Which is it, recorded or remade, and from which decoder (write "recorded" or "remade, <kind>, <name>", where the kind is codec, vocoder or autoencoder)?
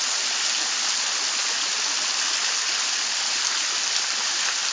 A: recorded